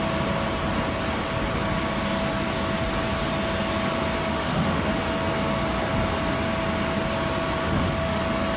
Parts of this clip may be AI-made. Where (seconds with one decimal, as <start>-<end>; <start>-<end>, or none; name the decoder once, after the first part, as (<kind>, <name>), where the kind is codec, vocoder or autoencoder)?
4.2-4.9 (autoencoder, DAC-VAE); 7.6-8.2